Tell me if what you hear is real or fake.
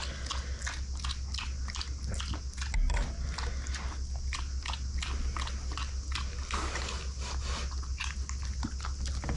real